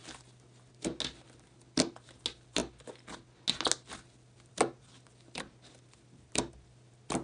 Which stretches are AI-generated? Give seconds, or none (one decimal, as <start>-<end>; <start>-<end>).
none